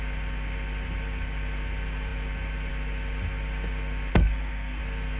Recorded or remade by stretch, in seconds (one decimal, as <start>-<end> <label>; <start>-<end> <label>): 0.0-4.1 recorded; 4.1-4.8 remade; 4.8-5.2 recorded

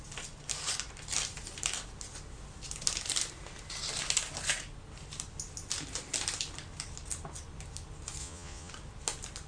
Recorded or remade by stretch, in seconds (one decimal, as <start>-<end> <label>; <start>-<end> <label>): 0.0-8.2 recorded; 8.2-8.7 remade; 8.7-9.5 recorded

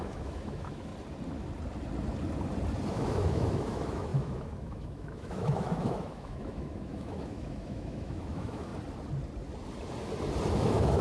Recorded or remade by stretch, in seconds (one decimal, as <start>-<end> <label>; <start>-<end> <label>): 0.0-0.9 remade; 0.9-2.9 recorded; 2.9-8.7 remade; 8.7-10.5 recorded; 10.5-11.0 remade

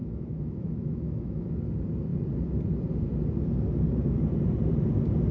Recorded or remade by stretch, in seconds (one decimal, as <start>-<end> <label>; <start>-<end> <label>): 0.0-1.5 remade; 1.5-5.3 recorded

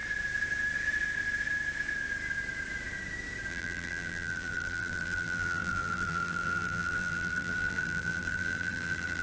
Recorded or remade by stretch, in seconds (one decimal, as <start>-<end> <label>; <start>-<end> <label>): 0.0-3.5 recorded; 3.5-9.2 remade